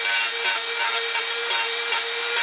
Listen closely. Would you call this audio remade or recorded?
recorded